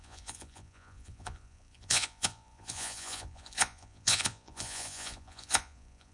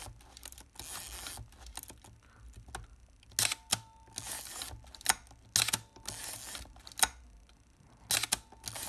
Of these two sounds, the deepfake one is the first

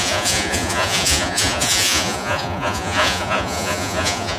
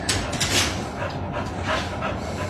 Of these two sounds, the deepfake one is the first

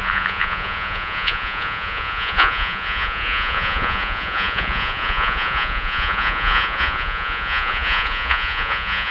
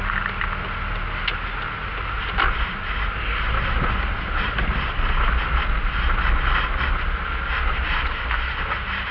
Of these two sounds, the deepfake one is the first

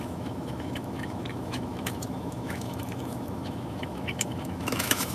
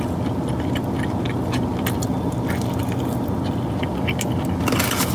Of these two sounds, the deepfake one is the first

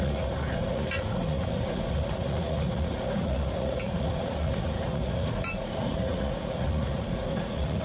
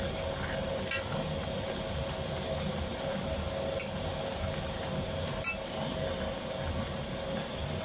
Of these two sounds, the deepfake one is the first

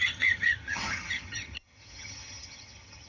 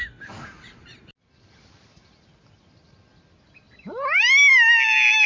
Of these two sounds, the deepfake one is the first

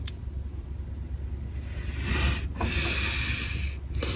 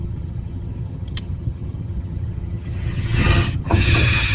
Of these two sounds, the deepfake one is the second